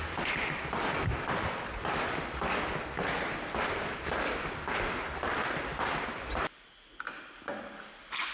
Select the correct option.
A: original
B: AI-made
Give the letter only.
A